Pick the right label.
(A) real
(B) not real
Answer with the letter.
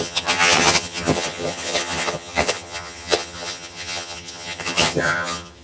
B